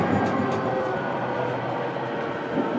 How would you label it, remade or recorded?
recorded